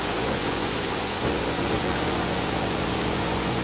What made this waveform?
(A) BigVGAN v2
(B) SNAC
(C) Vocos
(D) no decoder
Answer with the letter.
C